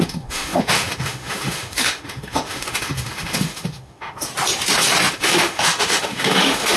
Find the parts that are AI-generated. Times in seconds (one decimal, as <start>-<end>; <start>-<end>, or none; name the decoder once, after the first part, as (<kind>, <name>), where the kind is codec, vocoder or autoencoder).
0.0-4.3 (autoencoder, DAC-VAE); 5.1-6.8